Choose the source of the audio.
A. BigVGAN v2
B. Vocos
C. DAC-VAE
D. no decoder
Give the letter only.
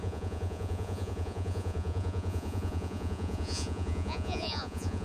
B